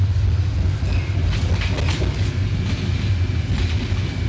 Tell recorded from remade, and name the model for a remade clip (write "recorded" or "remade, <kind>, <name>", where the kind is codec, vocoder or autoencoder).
recorded